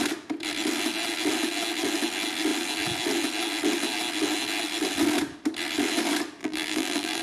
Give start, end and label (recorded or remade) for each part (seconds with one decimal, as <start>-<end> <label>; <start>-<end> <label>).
0.0-6.4 recorded; 6.4-7.2 remade